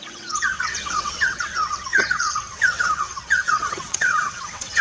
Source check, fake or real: fake